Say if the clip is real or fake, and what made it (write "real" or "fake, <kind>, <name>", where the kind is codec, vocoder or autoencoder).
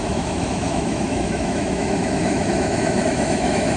fake, autoencoder, DAC-VAE